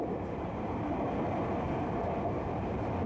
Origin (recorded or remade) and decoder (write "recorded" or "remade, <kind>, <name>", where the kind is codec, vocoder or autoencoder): recorded